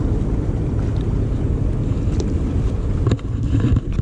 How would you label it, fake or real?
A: real